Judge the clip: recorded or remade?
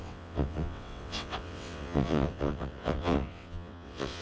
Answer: remade